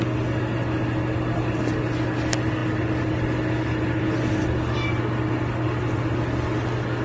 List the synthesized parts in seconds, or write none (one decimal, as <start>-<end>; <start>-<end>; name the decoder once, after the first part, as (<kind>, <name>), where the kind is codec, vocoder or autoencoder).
none